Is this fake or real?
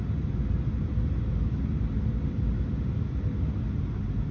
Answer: real